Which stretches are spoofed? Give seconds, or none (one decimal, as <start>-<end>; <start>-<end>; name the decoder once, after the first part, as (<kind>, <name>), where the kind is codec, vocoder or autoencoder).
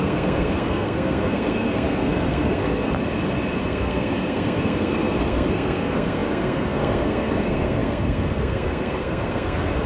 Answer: 0.0-2.9 (codec, SNAC); 3.6-9.9